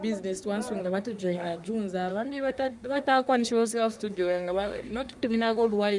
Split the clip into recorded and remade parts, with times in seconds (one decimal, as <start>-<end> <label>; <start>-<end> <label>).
0.0-0.8 recorded; 0.8-1.7 remade; 1.7-2.1 recorded; 2.1-6.0 remade